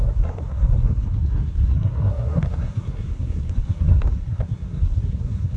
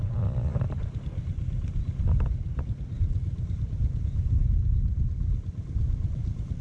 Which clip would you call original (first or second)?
second